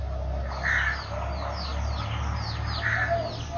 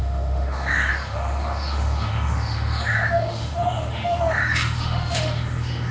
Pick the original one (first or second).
first